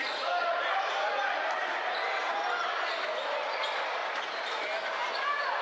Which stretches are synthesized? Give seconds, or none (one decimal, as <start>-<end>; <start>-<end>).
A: 0.0-1.1; 4.0-5.1